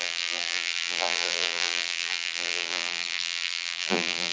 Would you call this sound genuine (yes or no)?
no